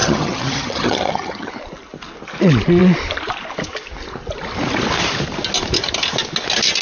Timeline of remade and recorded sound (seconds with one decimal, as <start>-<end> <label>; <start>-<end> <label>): 0.0-1.5 remade; 1.5-6.8 recorded